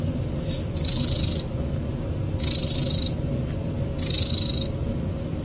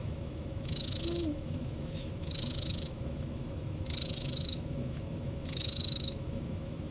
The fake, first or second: second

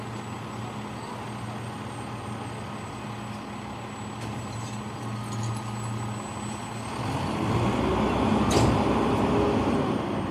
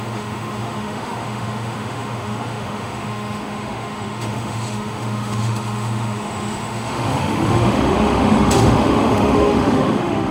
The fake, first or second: second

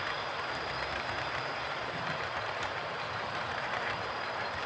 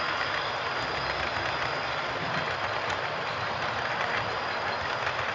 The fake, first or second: first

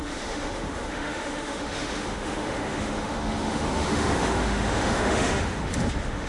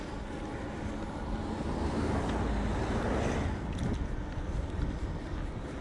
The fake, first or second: first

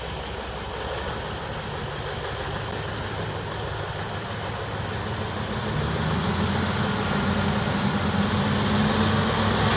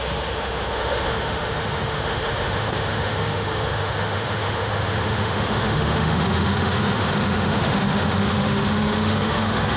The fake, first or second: second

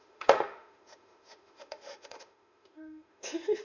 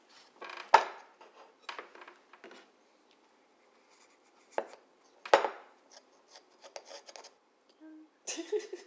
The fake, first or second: first